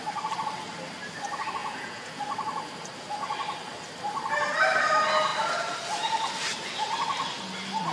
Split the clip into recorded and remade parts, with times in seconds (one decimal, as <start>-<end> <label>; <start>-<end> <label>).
0.0-1.6 recorded; 1.6-2.2 remade; 2.2-7.9 recorded